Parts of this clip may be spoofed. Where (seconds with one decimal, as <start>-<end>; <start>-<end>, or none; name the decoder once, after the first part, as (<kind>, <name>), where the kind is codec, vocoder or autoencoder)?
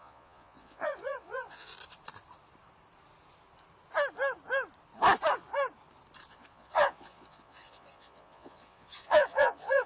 0.0-1.7 (vocoder, Vocos); 6.3-9.9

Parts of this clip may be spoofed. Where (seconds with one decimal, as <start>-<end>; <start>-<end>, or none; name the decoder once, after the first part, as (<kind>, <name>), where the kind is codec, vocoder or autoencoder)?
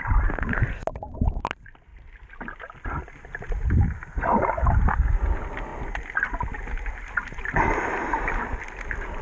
none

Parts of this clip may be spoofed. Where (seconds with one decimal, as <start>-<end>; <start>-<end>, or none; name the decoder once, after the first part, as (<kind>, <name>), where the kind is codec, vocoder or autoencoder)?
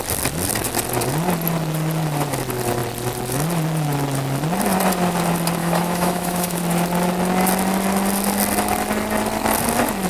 5.6-6.6 (autoencoder, DAC-VAE)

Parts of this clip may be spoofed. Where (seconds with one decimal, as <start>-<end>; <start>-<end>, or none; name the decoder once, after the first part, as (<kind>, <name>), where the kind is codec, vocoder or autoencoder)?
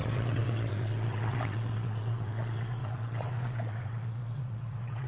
0.0-5.1 (vocoder, WaveNeXt)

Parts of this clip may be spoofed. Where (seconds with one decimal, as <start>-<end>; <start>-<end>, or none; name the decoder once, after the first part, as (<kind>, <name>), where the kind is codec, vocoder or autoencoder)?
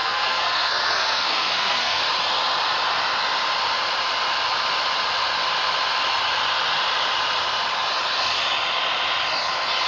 0.0-2.0 (codec, SNAC)